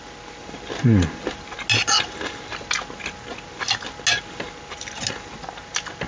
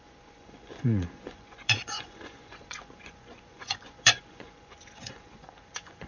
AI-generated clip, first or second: second